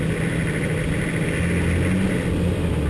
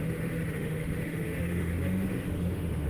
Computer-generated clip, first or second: second